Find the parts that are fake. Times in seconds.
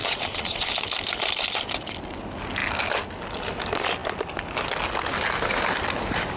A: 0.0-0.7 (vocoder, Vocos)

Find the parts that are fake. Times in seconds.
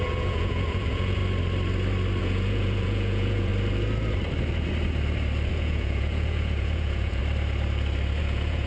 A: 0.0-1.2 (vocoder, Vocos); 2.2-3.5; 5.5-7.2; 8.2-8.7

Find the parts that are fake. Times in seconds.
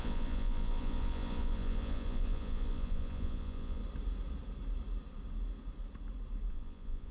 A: 0.0-3.8 (vocoder, Vocos); 6.5-7.1